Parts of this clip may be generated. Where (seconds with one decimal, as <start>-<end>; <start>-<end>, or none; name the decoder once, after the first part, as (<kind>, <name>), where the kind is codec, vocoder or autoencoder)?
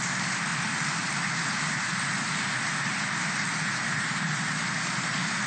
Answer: none